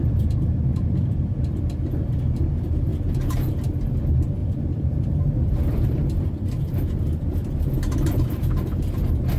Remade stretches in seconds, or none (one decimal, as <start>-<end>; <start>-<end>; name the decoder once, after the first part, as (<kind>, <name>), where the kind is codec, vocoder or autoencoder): 0.0-0.7 (vocoder, BigVGAN v2); 2.5-2.9; 4.0-9.4